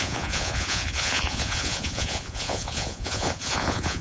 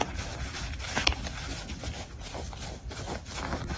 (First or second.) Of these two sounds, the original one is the second